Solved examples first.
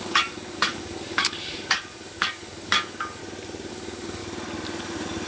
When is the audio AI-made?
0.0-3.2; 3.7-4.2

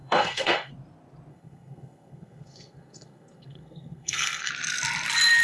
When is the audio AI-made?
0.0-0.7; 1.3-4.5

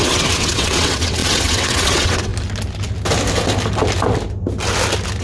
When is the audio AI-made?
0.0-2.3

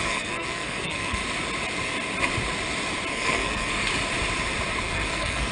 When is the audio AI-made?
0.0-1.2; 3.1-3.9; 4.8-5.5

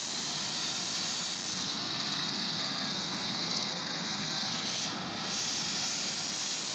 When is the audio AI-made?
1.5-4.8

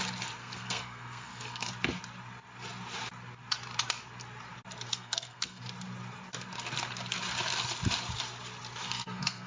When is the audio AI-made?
0.4-1.7; 4.9-5.6; 8.8-9.5

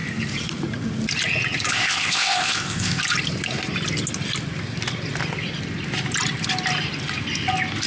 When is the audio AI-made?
1.7-3.0

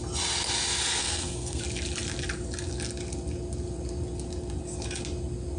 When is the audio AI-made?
1.0-1.6